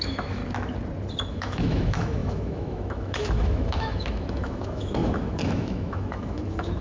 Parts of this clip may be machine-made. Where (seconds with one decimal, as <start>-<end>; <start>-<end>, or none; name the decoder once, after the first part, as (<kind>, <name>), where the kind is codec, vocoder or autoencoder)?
0.0-0.4 (autoencoder, DAC-VAE); 1.3-6.8